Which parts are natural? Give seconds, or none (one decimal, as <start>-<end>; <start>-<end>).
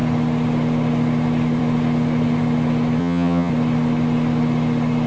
0.0-3.0; 3.5-5.1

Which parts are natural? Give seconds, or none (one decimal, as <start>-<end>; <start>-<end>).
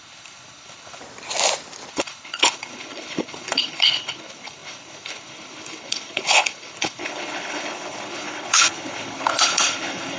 1.0-1.9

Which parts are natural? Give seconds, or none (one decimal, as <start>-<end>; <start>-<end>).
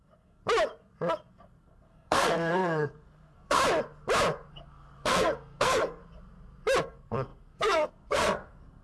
0.4-1.3; 3.6-4.5; 6.0-6.8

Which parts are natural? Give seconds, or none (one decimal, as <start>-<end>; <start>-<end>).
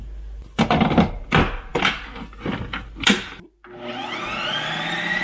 0.0-5.2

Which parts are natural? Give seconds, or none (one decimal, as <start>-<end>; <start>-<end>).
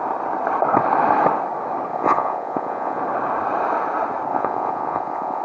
0.0-1.9; 3.0-4.3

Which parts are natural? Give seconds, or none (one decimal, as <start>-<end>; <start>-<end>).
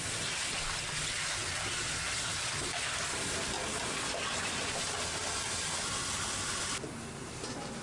0.0-7.8